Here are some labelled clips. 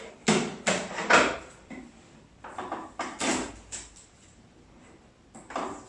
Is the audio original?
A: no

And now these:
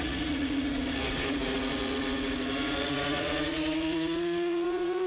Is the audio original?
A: no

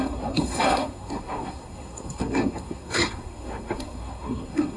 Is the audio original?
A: no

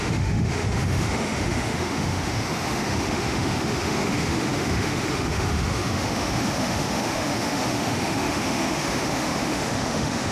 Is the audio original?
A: no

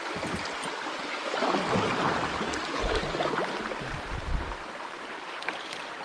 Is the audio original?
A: yes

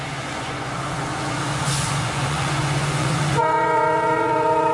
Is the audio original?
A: no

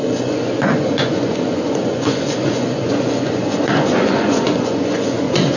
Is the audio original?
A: no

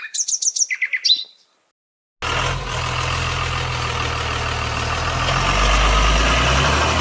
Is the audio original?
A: yes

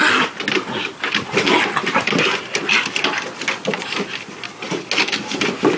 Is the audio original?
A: yes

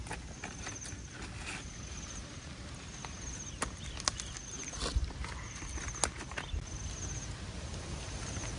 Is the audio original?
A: yes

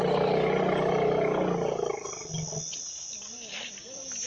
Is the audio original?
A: yes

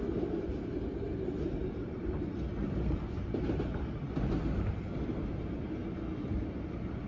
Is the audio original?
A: yes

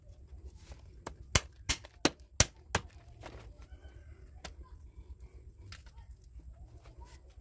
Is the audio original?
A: yes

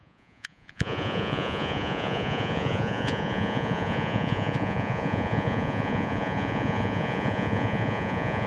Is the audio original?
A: no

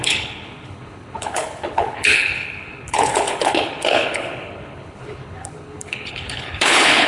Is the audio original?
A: no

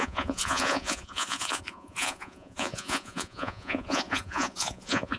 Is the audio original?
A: no